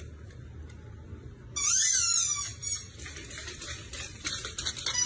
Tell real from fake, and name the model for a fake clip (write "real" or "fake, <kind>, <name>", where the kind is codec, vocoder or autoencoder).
real